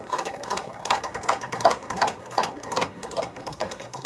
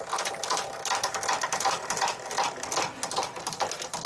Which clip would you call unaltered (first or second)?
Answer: second